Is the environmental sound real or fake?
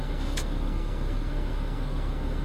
fake